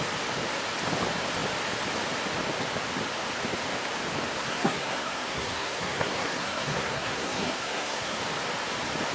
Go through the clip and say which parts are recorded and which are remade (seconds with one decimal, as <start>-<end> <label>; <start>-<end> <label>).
0.0-4.4 recorded; 4.4-8.2 remade; 8.2-9.1 recorded